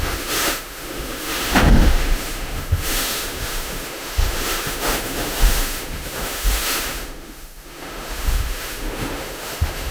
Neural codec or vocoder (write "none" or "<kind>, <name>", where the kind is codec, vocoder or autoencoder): autoencoder, DAC-VAE